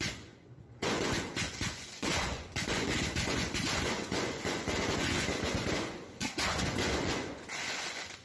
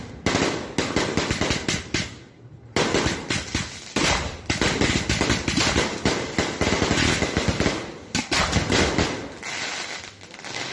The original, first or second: second